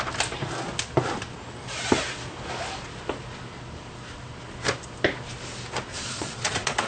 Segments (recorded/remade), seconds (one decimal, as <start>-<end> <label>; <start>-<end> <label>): 0.0-5.9 recorded; 5.9-6.9 remade